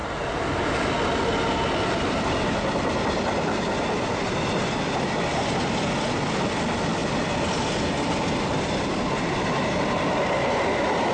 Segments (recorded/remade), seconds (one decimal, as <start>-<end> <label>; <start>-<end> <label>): 0.0-11.1 recorded